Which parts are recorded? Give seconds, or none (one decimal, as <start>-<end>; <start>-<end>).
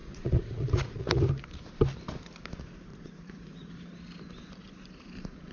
1.2-2.9; 3.7-5.5